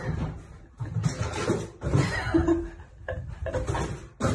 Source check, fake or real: real